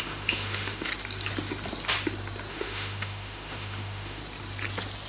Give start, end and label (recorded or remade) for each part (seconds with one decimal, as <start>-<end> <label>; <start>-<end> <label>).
0.0-0.9 remade; 0.9-2.5 recorded; 2.5-4.2 remade; 4.2-5.1 recorded